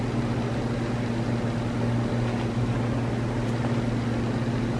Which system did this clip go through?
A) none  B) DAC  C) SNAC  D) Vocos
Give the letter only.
A